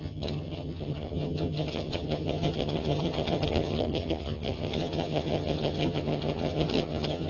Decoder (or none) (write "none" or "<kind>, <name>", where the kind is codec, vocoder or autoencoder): vocoder, HiFi-GAN